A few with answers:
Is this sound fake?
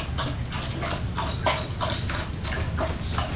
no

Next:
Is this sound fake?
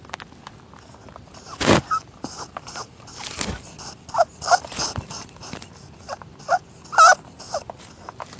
no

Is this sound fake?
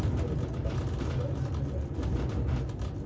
no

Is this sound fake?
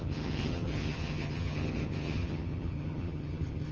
yes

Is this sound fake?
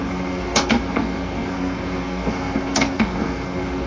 yes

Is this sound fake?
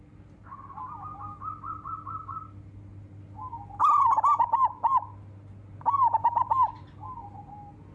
no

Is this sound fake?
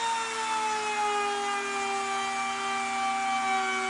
no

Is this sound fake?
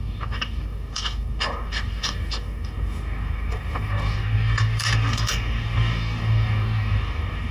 yes